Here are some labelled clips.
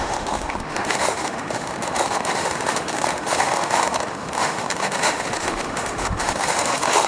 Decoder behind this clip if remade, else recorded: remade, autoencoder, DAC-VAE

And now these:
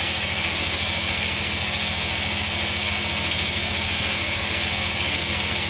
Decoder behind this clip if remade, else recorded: remade, codec, SNAC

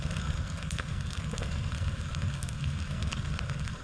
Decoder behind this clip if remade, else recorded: remade, codec, SNAC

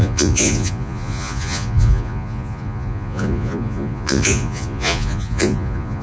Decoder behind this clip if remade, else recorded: remade, vocoder, Vocos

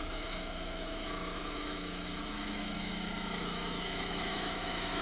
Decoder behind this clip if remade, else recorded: remade, autoencoder, DAC-VAE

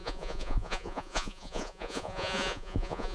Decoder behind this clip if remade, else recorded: remade, vocoder, Vocos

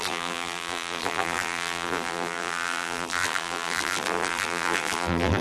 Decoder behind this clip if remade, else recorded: remade, vocoder, BigVGAN v2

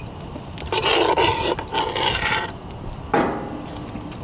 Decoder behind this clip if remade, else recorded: recorded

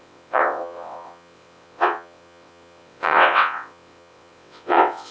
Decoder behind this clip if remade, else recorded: remade, vocoder, WaveNeXt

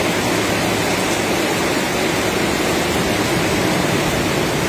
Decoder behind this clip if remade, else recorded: recorded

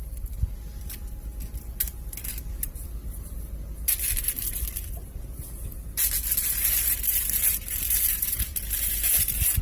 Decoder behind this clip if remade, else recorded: recorded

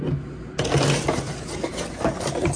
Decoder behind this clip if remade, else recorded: recorded